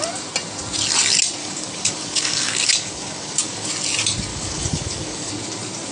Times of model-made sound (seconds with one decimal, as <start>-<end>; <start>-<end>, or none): 1.4-3.7; 4.3-5.3

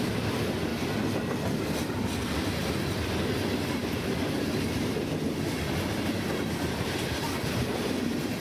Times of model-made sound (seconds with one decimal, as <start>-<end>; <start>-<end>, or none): none